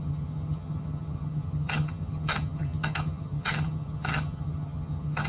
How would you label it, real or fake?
fake